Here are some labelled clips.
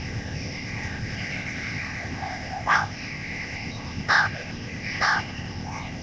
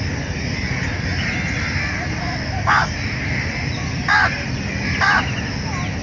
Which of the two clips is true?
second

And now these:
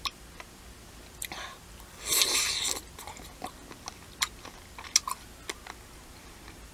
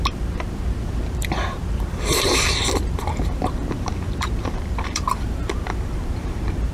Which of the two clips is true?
first